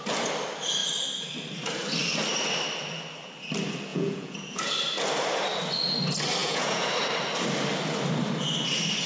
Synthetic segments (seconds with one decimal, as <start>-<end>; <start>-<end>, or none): 3.9-4.7; 6.4-6.9

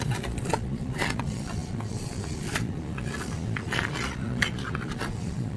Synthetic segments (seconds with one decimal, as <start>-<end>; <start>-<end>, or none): 0.0-5.6

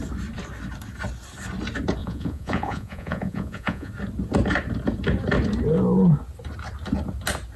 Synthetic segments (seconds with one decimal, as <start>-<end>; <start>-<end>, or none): 2.0-3.9

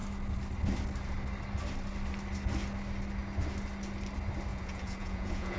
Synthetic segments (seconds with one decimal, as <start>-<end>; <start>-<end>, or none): 4.5-5.6

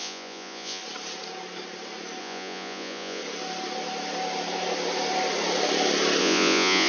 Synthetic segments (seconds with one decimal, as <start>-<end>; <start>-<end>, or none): 0.0-0.8; 2.2-3.2; 6.2-6.9